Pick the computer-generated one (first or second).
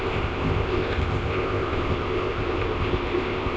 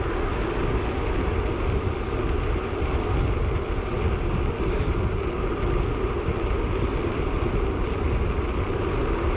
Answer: first